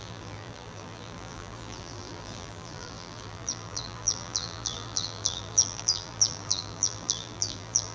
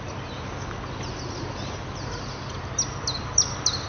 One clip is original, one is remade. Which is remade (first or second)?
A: first